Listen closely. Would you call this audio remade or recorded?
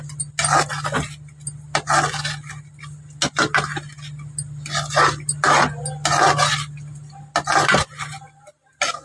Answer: recorded